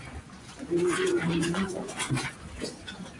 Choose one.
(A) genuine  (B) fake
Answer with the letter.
B